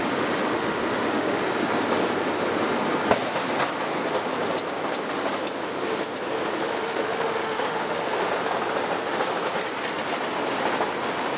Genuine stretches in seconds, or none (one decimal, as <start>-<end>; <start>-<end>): 0.0-0.5; 1.4-6.7; 8.3-11.4

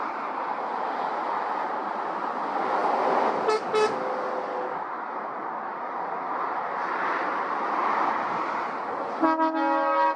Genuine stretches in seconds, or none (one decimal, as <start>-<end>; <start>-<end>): 0.0-10.2

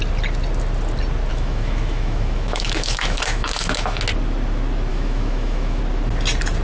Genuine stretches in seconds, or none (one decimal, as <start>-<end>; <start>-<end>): 0.0-1.3; 4.0-4.9; 5.8-6.6

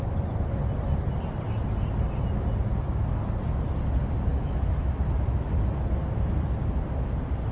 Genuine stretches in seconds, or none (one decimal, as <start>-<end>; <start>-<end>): 0.0-4.3; 5.5-7.5

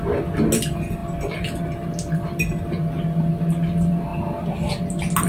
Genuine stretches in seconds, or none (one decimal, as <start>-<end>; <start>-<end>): 0.0-5.3